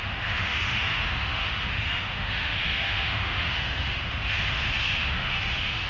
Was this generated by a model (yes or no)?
yes